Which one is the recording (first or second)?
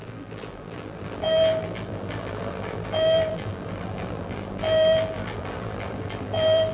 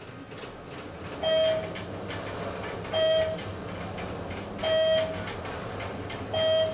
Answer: second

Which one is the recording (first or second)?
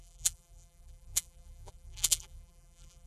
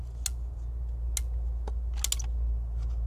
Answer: second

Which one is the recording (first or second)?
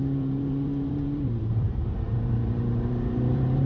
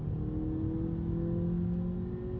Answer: second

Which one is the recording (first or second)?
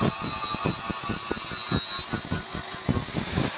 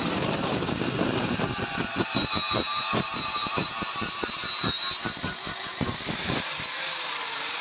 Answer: first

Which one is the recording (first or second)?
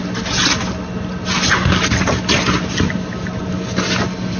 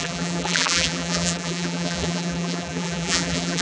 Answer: first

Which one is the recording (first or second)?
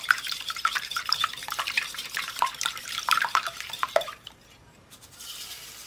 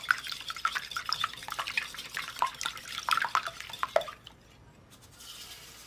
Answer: second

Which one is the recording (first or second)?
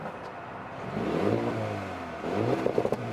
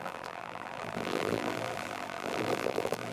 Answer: first